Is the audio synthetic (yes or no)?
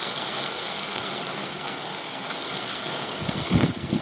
yes